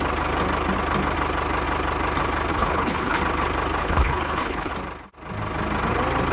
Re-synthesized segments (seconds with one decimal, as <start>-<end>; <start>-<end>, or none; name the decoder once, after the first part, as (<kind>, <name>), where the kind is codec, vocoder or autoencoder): 2.5-3.2 (codec, HILCodec); 3.8-4.7